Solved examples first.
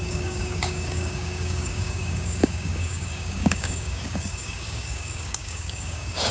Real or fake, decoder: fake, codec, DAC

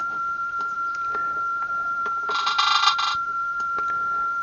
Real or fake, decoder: fake, vocoder, BigVGAN v2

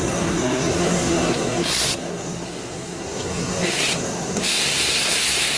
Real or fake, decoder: fake, codec, SNAC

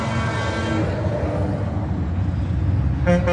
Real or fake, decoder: real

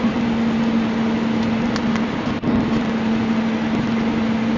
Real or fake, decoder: real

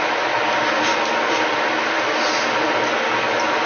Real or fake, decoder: real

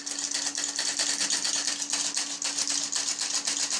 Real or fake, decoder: real